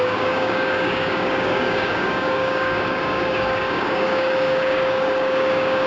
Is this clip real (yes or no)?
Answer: no